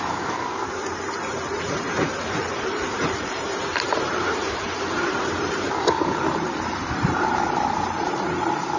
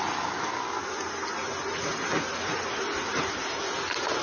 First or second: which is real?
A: second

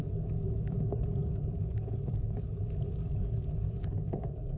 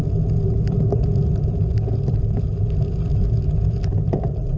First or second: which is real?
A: second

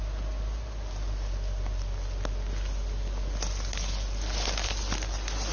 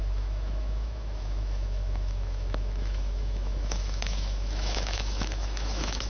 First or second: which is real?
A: first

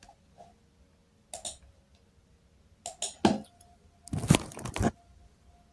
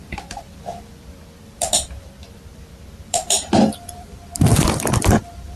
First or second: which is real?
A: first